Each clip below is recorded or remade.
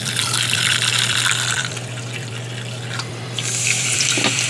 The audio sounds remade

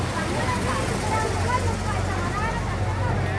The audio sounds recorded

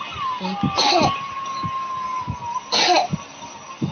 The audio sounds recorded